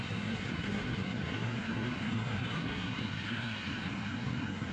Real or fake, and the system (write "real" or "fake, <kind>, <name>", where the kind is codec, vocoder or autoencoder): fake, codec, SNAC